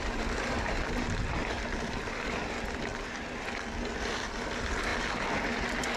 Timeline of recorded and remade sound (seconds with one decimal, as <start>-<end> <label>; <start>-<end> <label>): 0.0-6.0 recorded